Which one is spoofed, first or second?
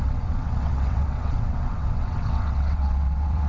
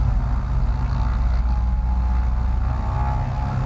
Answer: first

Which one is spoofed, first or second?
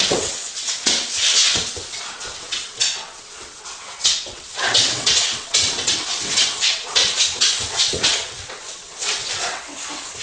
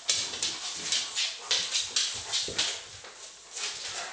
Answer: first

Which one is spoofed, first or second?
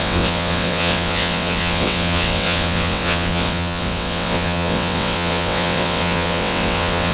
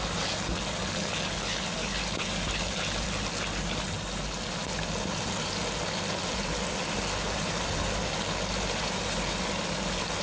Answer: first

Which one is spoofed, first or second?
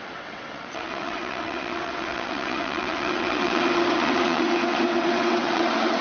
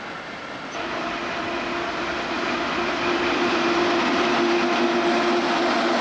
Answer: first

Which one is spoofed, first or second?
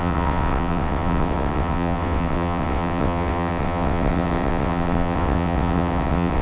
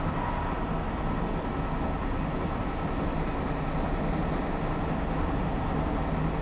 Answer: first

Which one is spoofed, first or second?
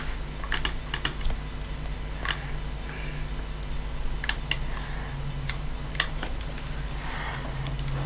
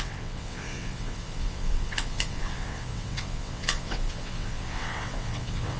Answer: second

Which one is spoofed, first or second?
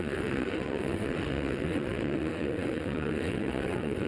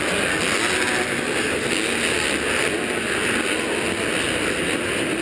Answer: first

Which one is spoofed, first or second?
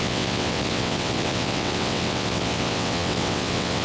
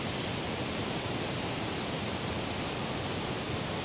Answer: first